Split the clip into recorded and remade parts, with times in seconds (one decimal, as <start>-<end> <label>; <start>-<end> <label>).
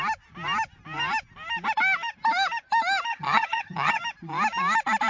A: 0.0-3.1 recorded; 3.1-4.0 remade; 4.0-5.1 recorded